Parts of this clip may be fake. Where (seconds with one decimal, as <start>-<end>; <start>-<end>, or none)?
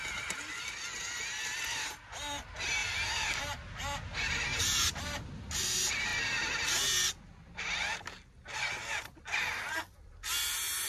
2.8-3.4; 4.5-5.3